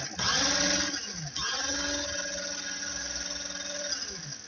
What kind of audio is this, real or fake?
real